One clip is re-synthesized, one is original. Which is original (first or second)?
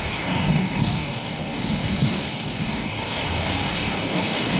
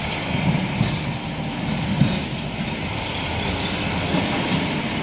second